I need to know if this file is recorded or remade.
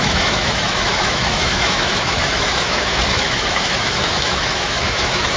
remade